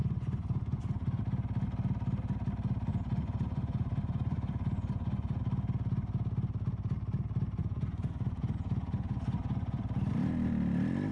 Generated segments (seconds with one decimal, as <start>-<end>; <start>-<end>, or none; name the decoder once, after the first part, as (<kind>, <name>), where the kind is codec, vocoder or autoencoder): 0.0-1.2 (vocoder, Vocos); 2.9-5.4; 7.6-9.8